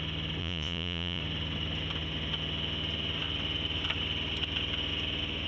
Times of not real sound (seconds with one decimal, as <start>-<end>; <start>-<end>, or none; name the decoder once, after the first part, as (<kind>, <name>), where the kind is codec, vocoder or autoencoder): 0.4-1.2 (vocoder, Vocos)